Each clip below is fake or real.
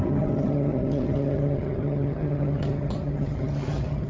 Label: fake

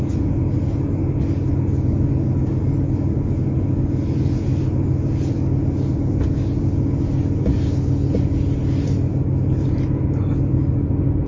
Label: real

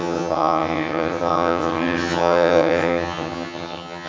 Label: fake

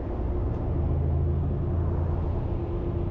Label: real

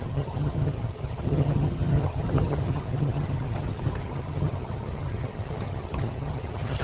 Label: fake